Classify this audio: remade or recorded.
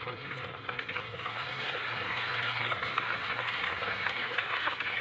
remade